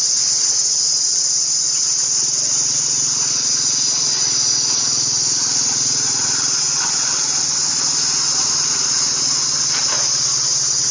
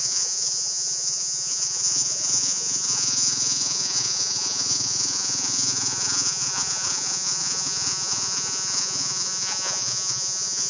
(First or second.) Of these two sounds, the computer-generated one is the second